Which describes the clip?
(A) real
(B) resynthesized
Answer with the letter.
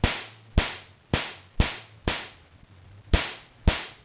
A